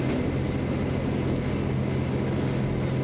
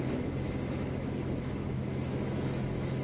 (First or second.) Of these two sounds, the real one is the first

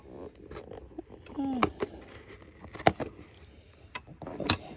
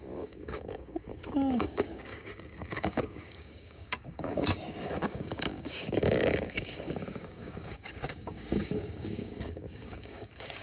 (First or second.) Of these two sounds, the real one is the first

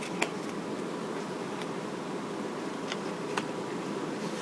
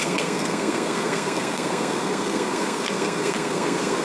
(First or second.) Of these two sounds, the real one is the first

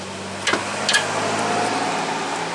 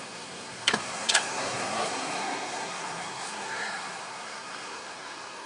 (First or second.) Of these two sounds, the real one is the first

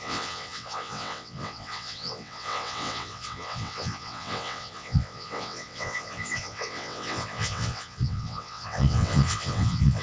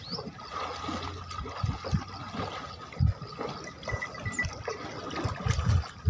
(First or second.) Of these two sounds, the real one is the second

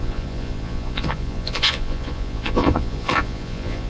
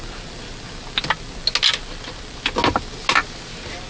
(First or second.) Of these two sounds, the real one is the second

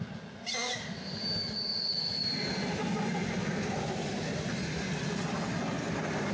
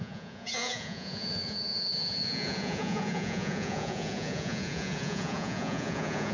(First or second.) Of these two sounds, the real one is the first